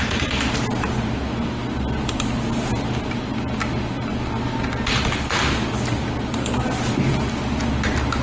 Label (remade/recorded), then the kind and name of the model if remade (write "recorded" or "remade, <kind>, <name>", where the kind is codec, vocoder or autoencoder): recorded